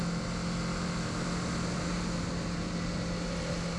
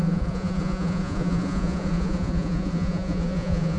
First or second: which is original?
first